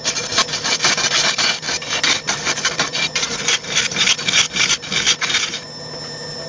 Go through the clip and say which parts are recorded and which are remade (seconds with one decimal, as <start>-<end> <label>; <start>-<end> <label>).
0.0-0.4 recorded; 0.4-4.0 remade; 4.0-6.5 recorded